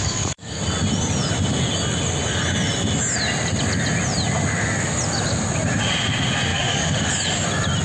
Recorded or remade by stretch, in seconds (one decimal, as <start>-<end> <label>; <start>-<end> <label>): 0.0-0.6 remade; 0.6-6.5 recorded; 6.5-7.1 remade; 7.1-7.8 recorded